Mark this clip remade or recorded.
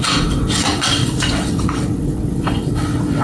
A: remade